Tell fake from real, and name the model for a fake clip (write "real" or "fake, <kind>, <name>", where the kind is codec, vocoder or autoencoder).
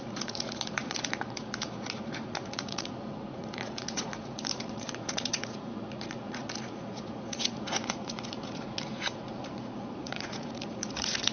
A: fake, vocoder, Vocos